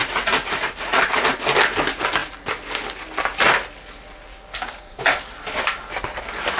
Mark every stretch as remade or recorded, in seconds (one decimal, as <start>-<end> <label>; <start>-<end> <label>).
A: 0.0-4.3 recorded; 4.3-5.0 remade; 5.0-6.6 recorded